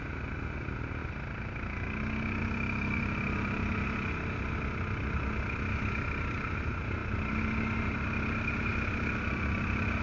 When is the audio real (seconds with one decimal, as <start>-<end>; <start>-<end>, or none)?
0.0-10.0